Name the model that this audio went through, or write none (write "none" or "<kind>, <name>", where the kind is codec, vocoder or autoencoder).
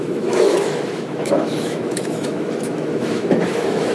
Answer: autoencoder, DAC-VAE